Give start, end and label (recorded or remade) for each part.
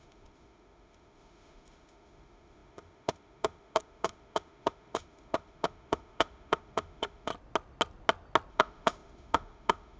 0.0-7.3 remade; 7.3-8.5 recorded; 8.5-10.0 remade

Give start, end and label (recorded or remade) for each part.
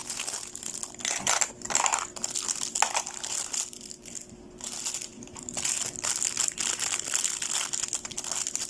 0.0-8.7 recorded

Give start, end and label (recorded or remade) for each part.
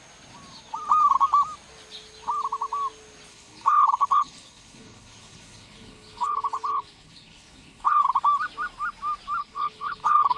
0.0-3.3 recorded; 3.3-8.0 remade; 8.0-9.4 recorded; 9.4-10.4 remade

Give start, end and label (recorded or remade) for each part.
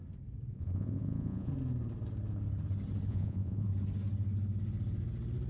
0.0-0.5 recorded; 0.5-1.5 remade; 1.5-3.1 recorded; 3.1-3.7 remade; 3.7-5.5 recorded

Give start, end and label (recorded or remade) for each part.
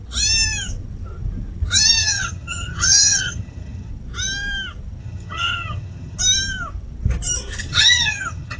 0.0-2.0 recorded; 2.0-3.9 remade; 3.9-5.0 recorded; 5.0-6.2 remade; 6.2-7.7 recorded; 7.7-8.6 remade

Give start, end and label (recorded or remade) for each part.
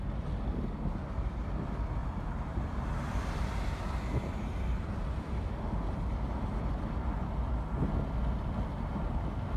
0.0-2.0 recorded; 2.0-6.0 remade; 6.0-9.6 recorded